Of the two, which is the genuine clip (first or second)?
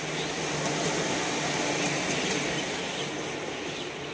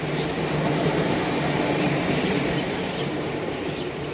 first